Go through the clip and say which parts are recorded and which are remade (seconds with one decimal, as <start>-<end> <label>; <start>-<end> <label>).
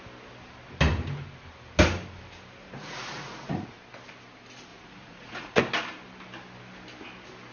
0.0-2.6 recorded; 2.6-3.8 remade; 3.8-4.7 recorded; 4.7-5.6 remade; 5.6-7.5 recorded